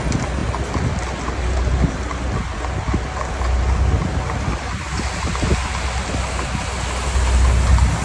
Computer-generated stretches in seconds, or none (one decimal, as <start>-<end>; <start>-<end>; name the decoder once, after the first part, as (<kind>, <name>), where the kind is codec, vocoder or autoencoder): none